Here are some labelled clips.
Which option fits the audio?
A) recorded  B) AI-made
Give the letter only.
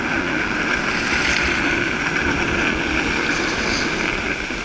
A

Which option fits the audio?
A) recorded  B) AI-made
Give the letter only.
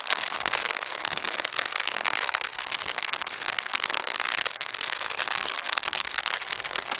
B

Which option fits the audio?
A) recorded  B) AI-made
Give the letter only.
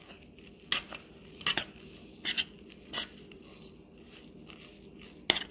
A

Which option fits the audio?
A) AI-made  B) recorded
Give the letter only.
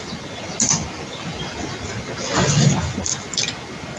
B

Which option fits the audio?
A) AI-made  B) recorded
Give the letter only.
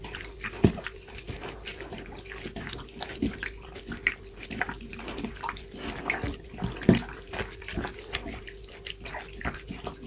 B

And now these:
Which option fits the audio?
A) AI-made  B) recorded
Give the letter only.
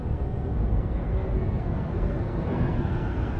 A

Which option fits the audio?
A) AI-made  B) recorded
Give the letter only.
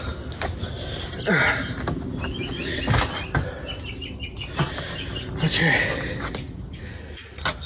B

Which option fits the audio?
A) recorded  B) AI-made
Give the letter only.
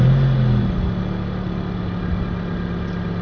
A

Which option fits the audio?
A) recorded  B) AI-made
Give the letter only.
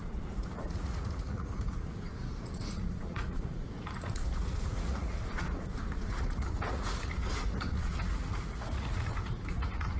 B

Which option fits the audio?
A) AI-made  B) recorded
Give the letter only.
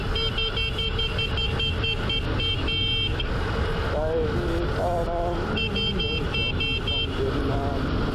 B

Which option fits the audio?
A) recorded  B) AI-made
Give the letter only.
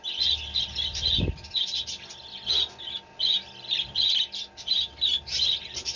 A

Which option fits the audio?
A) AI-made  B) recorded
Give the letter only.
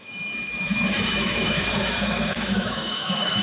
A